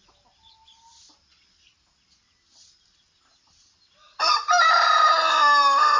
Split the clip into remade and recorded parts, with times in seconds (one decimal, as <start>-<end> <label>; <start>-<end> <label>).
0.0-6.0 recorded